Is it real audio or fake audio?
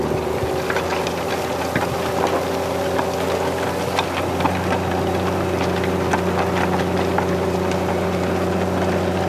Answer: real